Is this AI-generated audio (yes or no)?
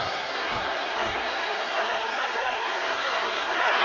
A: yes